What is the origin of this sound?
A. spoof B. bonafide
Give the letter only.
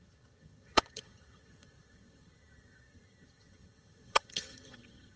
A